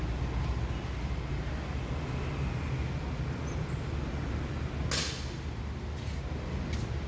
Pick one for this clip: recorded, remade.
recorded